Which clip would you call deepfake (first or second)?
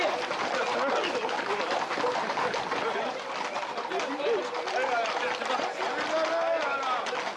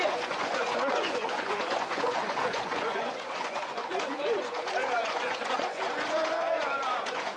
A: second